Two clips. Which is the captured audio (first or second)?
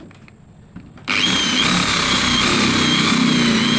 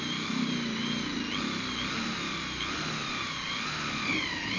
first